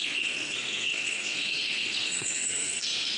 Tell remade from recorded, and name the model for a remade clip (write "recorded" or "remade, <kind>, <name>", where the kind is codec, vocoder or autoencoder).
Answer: remade, codec, SNAC